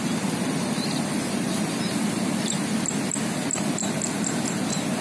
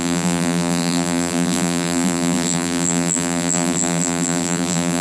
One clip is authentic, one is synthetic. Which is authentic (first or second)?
first